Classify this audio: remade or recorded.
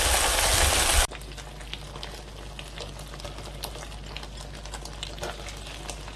recorded